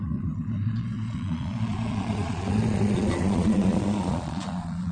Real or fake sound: fake